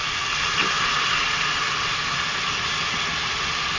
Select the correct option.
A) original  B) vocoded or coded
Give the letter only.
A